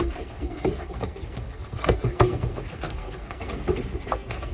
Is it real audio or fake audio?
fake